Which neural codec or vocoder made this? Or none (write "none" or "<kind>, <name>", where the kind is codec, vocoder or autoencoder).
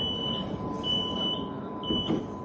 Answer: none